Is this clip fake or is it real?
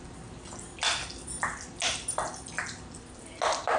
real